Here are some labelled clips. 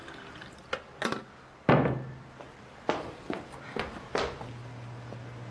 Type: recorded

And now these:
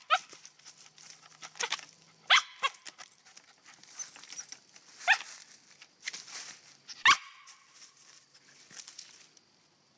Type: recorded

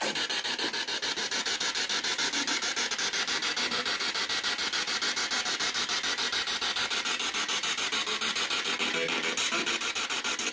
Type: recorded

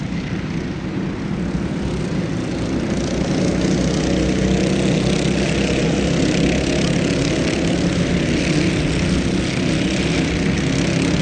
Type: recorded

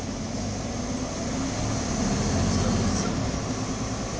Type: recorded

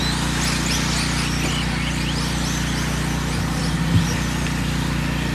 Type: recorded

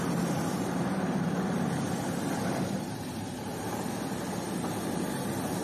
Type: remade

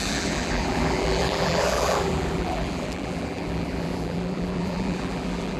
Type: remade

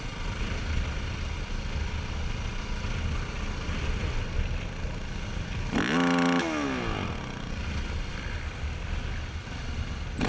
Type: recorded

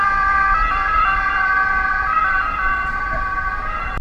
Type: remade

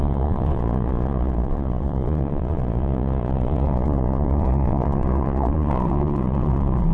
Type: remade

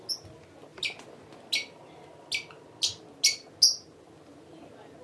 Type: recorded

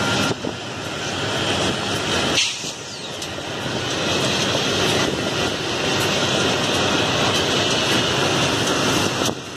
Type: recorded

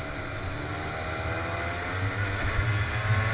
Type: recorded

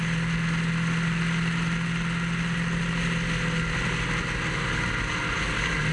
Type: recorded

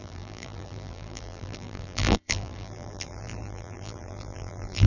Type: remade